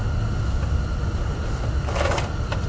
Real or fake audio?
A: real